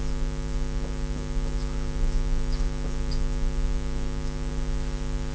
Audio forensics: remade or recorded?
recorded